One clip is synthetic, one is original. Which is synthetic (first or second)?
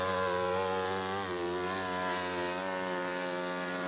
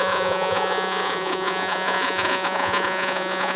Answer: second